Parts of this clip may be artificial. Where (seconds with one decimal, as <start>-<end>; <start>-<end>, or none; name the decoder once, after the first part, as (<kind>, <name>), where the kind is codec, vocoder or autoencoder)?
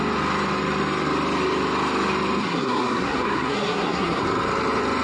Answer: 2.4-4.2 (codec, SNAC)